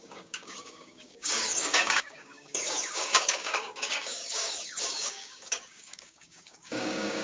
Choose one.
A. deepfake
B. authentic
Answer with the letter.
A